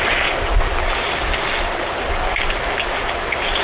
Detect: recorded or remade recorded